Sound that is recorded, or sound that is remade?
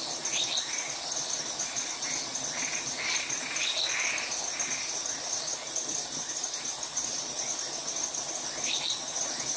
recorded